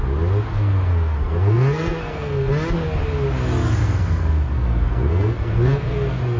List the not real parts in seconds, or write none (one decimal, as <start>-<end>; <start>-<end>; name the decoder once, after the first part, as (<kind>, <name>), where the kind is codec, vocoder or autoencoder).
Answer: 0.5-2.5 (codec, SNAC); 3.8-6.4